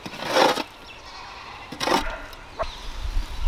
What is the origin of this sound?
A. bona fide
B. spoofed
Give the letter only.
A